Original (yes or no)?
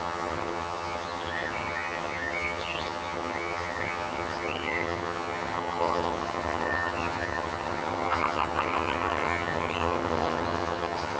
no